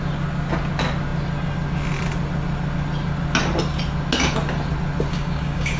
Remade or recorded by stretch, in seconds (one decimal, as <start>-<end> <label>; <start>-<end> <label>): 0.0-5.1 recorded; 5.1-5.8 remade

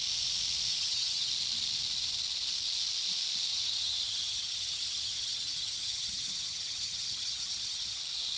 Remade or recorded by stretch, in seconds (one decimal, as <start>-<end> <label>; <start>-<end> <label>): 0.0-0.7 recorded; 0.7-1.3 remade; 1.3-3.5 recorded; 3.5-8.0 remade; 8.0-8.4 recorded

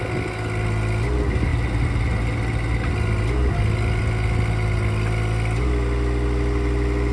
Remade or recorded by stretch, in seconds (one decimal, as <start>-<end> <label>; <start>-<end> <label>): 0.0-7.1 recorded

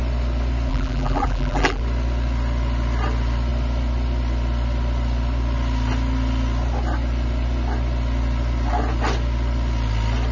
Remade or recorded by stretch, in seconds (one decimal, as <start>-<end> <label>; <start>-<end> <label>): 0.0-0.7 recorded; 0.7-1.8 remade; 1.8-10.3 recorded

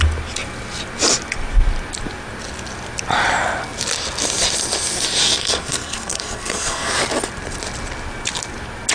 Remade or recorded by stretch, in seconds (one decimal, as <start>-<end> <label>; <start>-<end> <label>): 0.0-5.2 recorded; 5.2-6.9 remade; 6.9-8.9 recorded

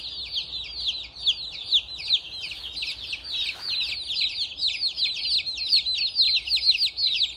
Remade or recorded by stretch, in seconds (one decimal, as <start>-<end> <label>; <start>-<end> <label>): 0.0-7.4 recorded

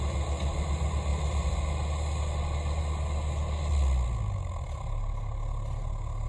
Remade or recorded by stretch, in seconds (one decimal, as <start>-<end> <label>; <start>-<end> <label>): 0.0-6.3 recorded

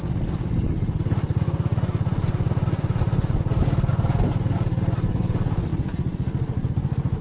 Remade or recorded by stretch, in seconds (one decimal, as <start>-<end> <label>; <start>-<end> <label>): 0.0-7.2 recorded